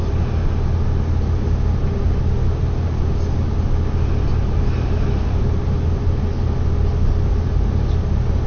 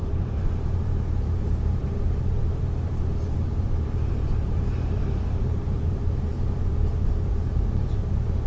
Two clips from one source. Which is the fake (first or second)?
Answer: second